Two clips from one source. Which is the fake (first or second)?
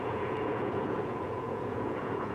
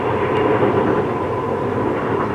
first